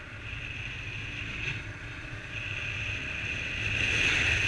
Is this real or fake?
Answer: real